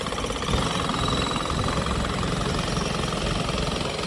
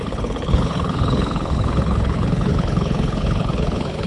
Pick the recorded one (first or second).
first